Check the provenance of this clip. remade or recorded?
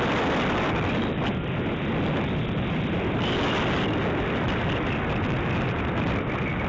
recorded